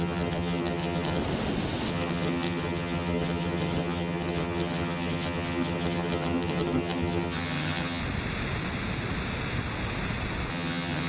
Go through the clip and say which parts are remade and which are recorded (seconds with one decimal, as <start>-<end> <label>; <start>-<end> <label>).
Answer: 0.0-1.2 remade; 1.2-1.9 recorded; 1.9-8.0 remade; 8.0-10.5 recorded; 10.5-11.1 remade

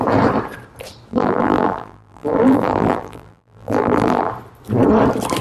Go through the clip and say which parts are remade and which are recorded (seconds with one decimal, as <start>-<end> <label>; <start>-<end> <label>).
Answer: 0.0-1.1 recorded; 1.1-4.3 remade; 4.3-5.4 recorded

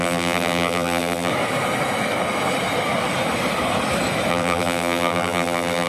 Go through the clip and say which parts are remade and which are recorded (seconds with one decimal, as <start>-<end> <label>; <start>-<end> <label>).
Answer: 0.0-1.3 remade; 1.3-4.3 recorded; 4.3-5.9 remade